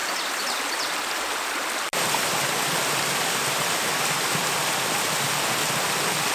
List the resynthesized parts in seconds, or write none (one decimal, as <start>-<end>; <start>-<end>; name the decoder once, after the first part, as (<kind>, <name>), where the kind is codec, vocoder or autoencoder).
none